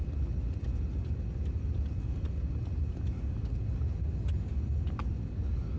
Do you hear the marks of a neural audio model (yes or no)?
no